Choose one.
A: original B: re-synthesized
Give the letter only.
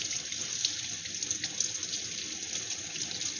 A